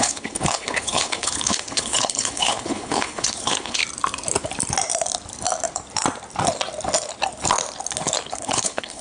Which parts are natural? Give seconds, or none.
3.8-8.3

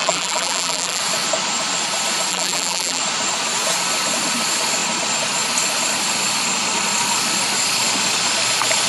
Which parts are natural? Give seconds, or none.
1.0-2.3; 3.0-8.9

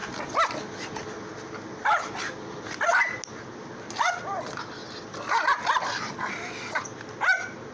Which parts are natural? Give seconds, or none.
0.0-7.7